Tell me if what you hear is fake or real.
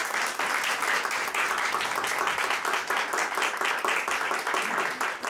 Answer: real